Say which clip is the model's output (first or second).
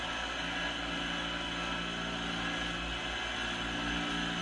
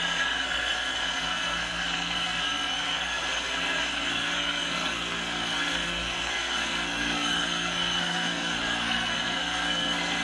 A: second